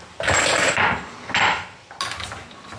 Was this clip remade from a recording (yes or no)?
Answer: no